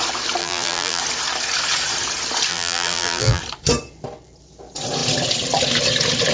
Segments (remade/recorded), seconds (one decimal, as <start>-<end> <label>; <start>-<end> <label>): 0.0-0.4 recorded; 0.4-1.0 remade; 1.0-2.5 recorded; 2.5-3.4 remade; 3.4-6.3 recorded